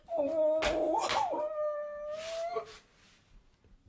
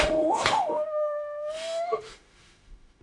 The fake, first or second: second